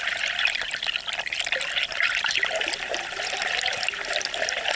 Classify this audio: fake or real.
real